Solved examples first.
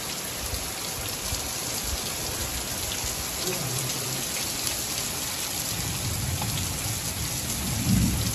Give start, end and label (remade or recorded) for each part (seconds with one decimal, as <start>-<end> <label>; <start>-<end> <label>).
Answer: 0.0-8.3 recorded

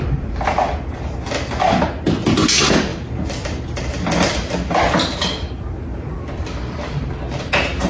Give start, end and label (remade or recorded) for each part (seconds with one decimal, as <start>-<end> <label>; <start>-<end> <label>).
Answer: 0.0-2.9 recorded; 2.9-4.9 remade; 4.9-7.9 recorded

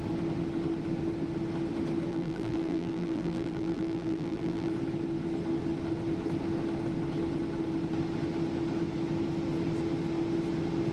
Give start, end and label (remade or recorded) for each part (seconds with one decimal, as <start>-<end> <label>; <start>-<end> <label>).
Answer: 0.0-2.1 recorded; 2.1-4.7 remade; 4.7-10.9 recorded

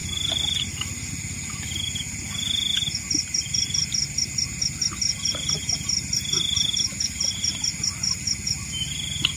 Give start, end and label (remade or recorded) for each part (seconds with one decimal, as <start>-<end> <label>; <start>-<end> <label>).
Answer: 0.0-1.1 remade; 1.1-9.4 recorded

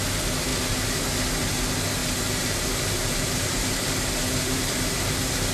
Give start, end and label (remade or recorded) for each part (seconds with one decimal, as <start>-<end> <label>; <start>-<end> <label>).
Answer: 0.0-0.5 recorded; 0.5-1.0 remade; 1.0-2.0 recorded; 2.0-5.0 remade; 5.0-5.5 recorded